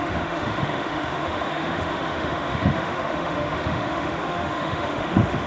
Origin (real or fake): fake